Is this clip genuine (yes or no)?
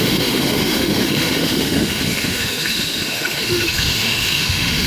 no